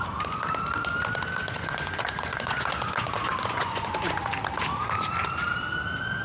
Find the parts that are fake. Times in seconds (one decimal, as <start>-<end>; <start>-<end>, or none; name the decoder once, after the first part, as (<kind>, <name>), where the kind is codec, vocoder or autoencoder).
1.4-4.2 (vocoder, Vocos)